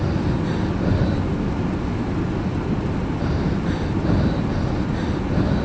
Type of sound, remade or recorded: recorded